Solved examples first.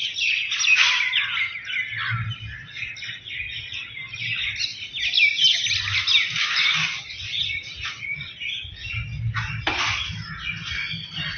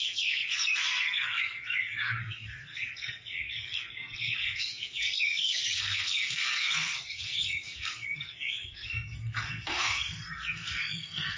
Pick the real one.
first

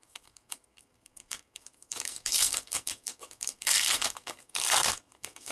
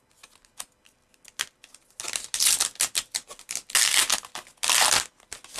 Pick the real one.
second